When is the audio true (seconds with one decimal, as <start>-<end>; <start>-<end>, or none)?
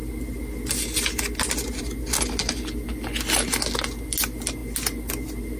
0.0-5.6